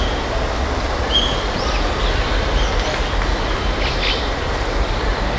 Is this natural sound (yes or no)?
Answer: yes